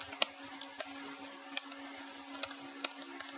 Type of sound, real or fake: real